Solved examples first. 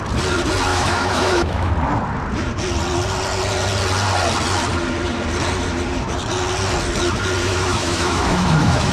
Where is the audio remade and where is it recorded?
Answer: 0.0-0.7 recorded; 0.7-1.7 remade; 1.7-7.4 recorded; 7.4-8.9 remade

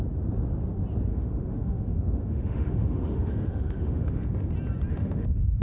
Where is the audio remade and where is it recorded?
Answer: 0.0-1.1 recorded; 1.1-4.5 remade; 4.5-4.9 recorded; 4.9-5.6 remade

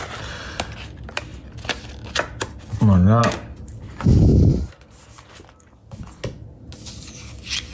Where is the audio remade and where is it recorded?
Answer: 0.0-7.7 recorded

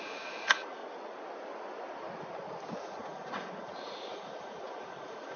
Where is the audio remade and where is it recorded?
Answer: 0.0-0.8 remade; 0.8-2.8 recorded; 2.8-5.4 remade

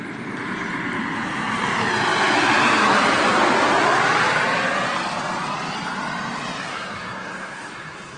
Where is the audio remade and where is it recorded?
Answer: 0.0-6.7 recorded; 6.7-8.2 remade

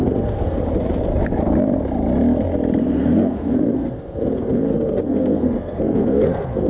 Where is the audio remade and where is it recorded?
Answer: 0.0-0.6 remade; 0.6-2.8 recorded; 2.8-6.7 remade

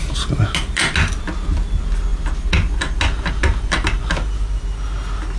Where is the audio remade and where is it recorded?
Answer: 0.0-5.4 recorded

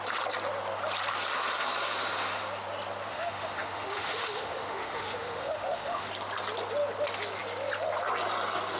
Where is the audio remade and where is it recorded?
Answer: 0.0-3.1 recorded; 3.1-6.1 remade; 6.1-8.8 recorded